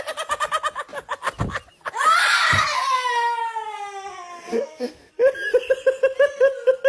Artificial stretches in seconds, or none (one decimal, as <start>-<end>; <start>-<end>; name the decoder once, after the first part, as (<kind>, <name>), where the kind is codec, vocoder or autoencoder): 4.5-5.1 (autoencoder, DAC-VAE)